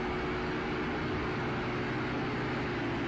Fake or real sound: real